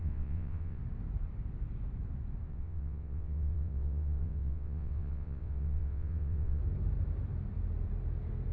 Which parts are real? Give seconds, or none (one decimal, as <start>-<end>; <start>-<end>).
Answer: 0.8-2.5; 6.6-8.5